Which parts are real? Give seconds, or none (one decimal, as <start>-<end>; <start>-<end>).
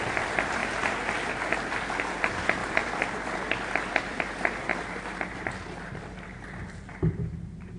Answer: 0.6-1.3